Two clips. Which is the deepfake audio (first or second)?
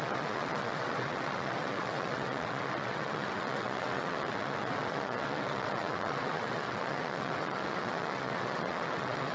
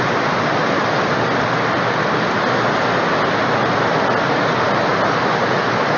first